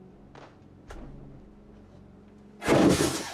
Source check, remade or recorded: recorded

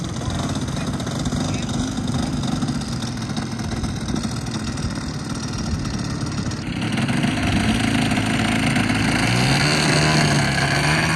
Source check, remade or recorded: recorded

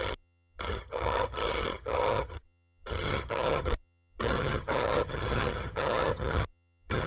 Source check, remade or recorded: remade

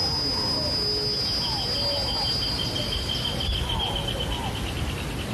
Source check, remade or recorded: recorded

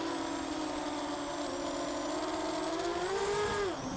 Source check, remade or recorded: recorded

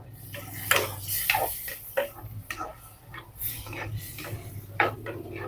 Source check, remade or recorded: recorded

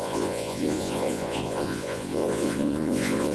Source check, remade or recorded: remade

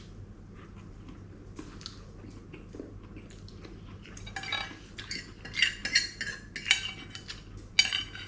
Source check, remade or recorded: recorded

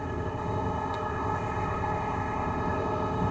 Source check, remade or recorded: remade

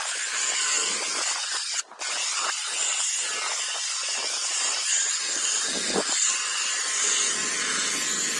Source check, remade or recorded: remade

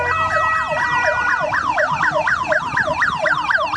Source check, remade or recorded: recorded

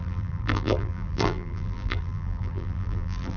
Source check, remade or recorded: remade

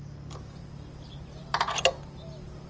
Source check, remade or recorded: recorded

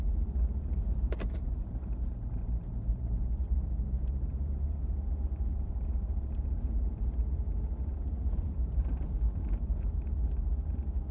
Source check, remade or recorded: remade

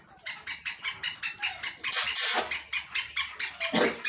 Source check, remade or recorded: recorded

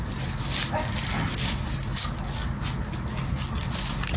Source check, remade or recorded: recorded